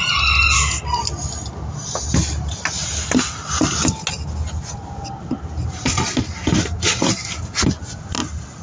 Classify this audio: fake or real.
real